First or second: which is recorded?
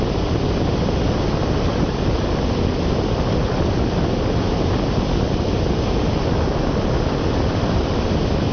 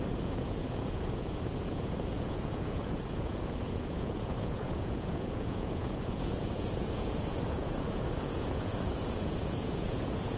first